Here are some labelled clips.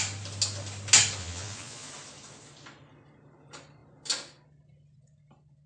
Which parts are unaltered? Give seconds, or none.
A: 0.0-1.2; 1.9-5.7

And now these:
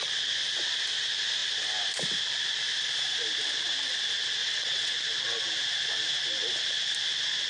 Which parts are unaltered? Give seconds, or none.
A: 0.0-4.4; 4.9-7.5

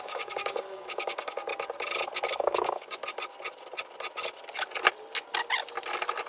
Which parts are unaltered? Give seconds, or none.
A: 1.5-2.3; 3.0-6.3

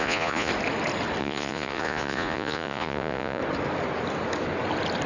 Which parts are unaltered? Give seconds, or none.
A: 0.5-1.2; 3.4-5.1

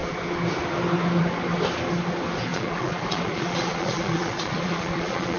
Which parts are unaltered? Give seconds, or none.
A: 0.0-2.5

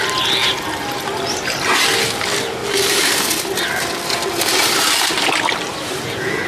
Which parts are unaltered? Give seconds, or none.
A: 0.0-2.6; 3.8-6.5

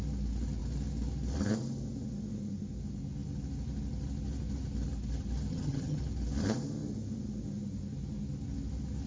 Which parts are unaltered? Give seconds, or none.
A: 0.0-5.5; 6.0-9.1